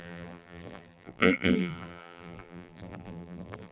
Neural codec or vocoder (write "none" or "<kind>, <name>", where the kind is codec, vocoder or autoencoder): vocoder, BigVGAN v2